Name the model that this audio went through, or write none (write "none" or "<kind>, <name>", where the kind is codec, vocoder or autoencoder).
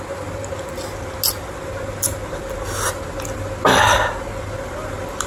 none